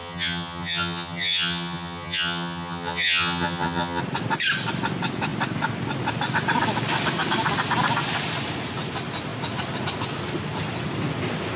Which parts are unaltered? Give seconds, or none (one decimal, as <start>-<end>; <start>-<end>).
4.0-11.6